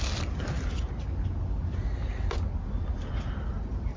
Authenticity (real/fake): real